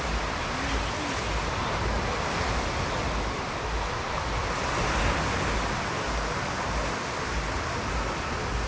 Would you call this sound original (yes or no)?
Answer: yes